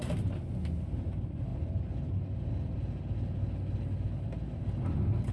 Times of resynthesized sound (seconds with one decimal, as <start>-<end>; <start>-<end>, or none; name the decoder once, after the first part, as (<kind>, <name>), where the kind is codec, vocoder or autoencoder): none